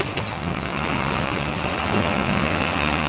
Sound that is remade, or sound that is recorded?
remade